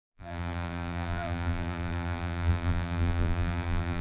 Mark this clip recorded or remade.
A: remade